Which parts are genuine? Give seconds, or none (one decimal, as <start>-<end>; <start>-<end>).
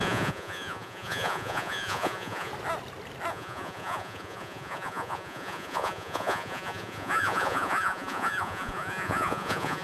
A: 2.5-3.3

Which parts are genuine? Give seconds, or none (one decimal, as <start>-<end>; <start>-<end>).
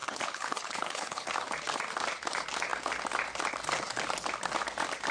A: 1.3-5.1